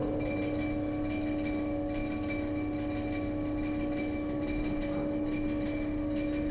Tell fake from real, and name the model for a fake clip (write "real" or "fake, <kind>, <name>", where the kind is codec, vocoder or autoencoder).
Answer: real